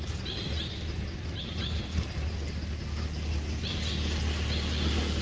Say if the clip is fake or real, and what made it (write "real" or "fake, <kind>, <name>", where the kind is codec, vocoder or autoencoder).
real